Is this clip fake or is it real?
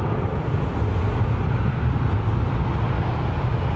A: real